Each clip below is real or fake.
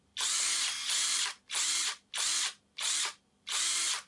real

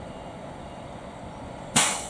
fake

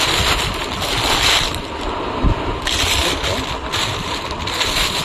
fake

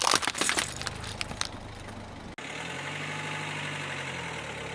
real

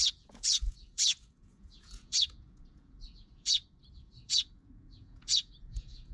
fake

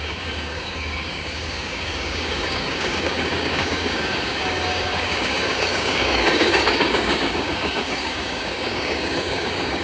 fake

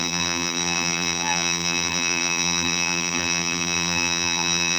fake